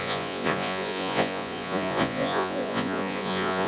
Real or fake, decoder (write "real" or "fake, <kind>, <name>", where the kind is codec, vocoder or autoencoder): fake, vocoder, Vocos